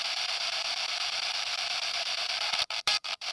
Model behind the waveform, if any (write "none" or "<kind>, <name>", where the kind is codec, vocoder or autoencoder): vocoder, BigVGAN v2